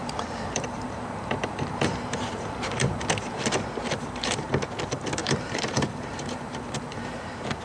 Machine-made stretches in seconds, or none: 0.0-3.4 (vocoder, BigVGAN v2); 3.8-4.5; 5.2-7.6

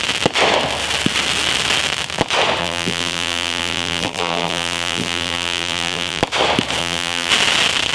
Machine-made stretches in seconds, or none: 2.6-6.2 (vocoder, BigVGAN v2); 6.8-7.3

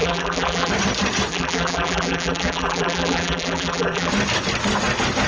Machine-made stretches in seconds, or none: 0.0-0.7 (vocoder, BigVGAN v2); 1.3-4.1

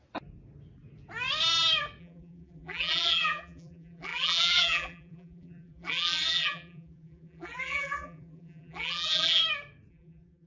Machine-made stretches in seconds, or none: 2.0-9.4 (vocoder, BigVGAN v2); 9.9-10.5

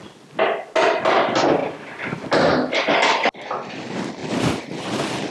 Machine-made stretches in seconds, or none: 1.6-2.3 (vocoder, BigVGAN v2); 4.2-5.3

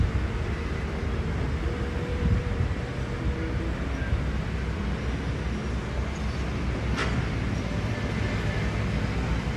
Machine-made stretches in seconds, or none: 2.1-2.8 (vocoder, BigVGAN v2)